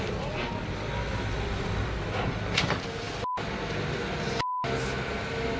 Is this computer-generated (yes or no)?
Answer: no